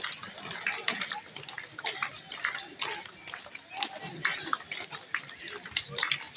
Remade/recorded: recorded